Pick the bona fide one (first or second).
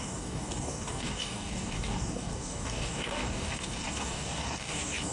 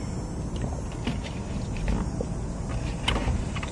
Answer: second